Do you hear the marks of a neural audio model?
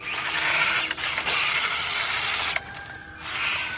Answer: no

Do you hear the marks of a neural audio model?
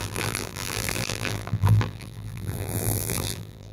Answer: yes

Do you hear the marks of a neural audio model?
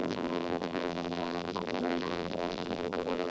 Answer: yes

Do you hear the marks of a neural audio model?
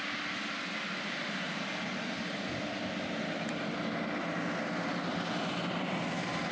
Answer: no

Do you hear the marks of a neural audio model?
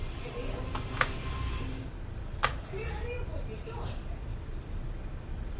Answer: no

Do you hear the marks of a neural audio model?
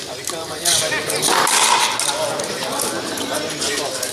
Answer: no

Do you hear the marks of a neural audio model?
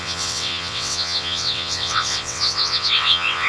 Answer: yes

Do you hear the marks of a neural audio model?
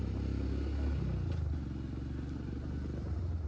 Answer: no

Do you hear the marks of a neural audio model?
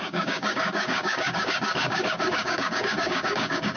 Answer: yes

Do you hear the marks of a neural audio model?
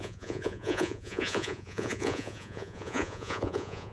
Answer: yes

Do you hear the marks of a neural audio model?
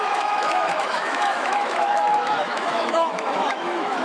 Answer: yes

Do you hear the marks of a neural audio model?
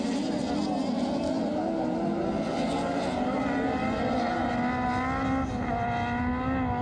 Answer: no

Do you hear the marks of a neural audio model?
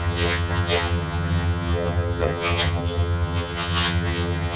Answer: yes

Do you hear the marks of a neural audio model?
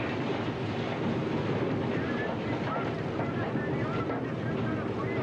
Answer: no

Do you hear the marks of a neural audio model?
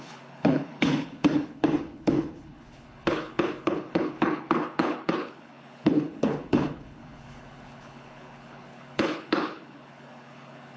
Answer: yes